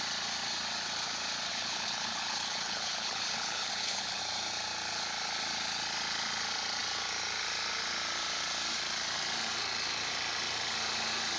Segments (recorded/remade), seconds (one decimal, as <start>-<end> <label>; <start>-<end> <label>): 0.0-1.5 recorded; 1.5-4.2 remade; 4.2-11.4 recorded